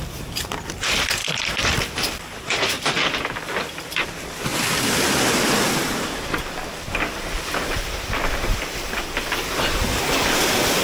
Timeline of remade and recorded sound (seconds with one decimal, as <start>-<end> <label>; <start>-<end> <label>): 0.0-1.2 recorded; 1.2-3.4 remade; 3.4-4.5 recorded; 4.5-5.0 remade; 5.0-10.8 recorded